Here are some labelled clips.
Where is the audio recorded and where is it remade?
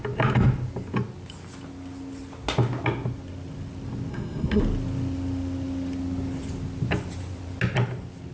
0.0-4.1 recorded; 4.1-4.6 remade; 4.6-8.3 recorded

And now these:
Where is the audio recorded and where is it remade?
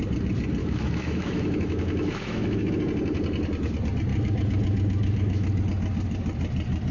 0.0-0.6 recorded; 0.6-2.7 remade; 2.7-4.1 recorded; 4.1-5.6 remade; 5.6-6.9 recorded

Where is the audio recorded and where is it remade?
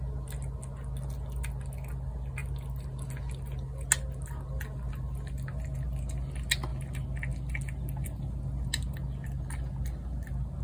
0.0-10.6 recorded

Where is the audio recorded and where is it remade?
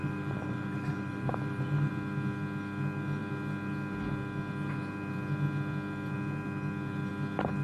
0.0-1.9 remade; 1.9-7.6 recorded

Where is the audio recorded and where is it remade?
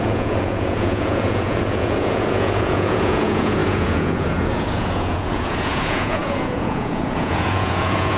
0.0-8.2 remade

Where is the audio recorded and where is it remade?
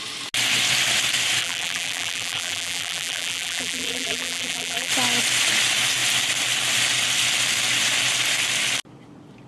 0.0-1.4 recorded; 1.4-4.9 remade; 4.9-9.5 recorded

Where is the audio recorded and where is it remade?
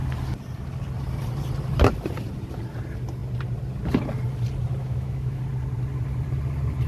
0.0-4.8 recorded; 4.8-5.4 remade; 5.4-6.9 recorded